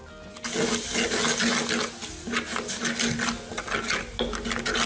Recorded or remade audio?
recorded